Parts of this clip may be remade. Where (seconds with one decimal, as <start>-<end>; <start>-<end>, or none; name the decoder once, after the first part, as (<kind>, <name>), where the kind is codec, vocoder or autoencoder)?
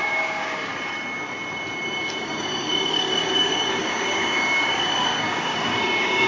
0.0-0.7 (codec, DAC); 2.2-6.3